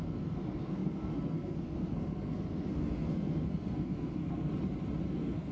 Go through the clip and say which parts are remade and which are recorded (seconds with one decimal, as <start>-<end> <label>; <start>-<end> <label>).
0.0-4.5 remade; 4.5-5.1 recorded; 5.1-5.5 remade